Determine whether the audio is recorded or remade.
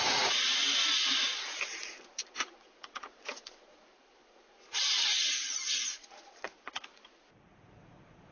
remade